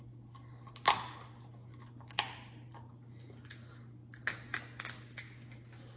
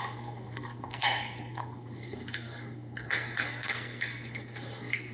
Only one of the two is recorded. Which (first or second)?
first